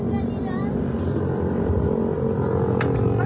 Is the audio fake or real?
real